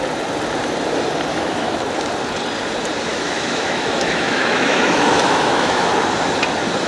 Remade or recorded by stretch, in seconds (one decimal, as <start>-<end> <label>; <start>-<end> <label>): 0.0-1.3 recorded; 1.3-1.8 remade; 1.8-3.1 recorded; 3.1-5.9 remade; 5.9-6.9 recorded